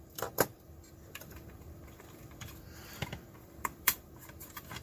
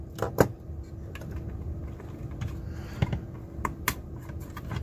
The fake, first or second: first